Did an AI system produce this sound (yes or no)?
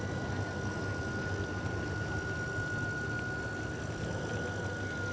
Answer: no